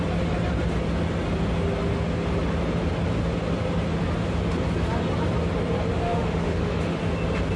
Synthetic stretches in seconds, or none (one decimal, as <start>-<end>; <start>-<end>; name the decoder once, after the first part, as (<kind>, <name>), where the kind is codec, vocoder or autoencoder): 6.1-7.0 (autoencoder, DAC-VAE)